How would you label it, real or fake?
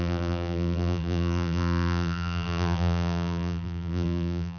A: fake